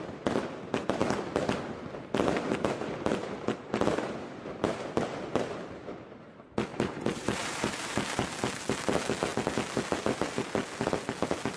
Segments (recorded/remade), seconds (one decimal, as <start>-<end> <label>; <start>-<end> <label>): 0.0-6.7 recorded; 6.7-8.3 remade; 8.3-11.6 recorded

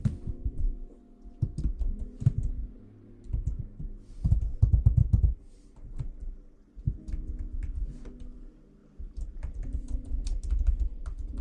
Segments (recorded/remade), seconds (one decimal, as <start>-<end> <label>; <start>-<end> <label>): 0.0-5.0 recorded; 5.0-5.7 remade; 5.7-8.8 recorded; 8.8-10.4 remade; 10.4-11.4 recorded

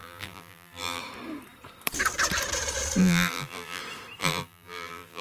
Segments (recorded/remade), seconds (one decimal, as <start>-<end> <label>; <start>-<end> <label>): 0.0-1.0 remade; 1.0-3.0 recorded; 3.0-3.8 remade; 3.8-4.2 recorded; 4.2-5.2 remade

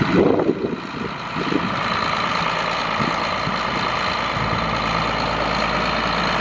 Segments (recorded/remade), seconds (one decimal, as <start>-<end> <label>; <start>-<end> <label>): 0.0-2.3 recorded; 2.3-2.8 remade; 2.8-6.4 recorded

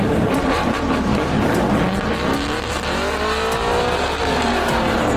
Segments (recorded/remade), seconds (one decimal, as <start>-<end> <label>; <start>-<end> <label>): 0.0-1.1 remade; 1.1-4.2 recorded; 4.2-5.2 remade

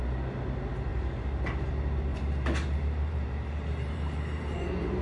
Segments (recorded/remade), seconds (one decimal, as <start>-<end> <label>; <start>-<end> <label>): 0.0-0.9 recorded; 0.9-1.7 remade; 1.7-2.1 recorded; 2.1-5.0 remade

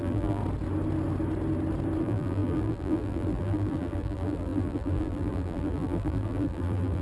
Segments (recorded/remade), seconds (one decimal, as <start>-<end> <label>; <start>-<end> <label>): 0.0-0.4 remade; 0.4-2.0 recorded; 2.0-7.0 remade